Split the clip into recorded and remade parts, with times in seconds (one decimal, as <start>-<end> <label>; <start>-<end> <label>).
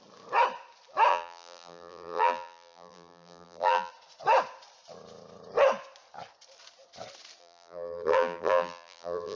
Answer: 0.0-1.1 recorded; 1.1-3.9 remade; 3.9-7.4 recorded; 7.4-9.4 remade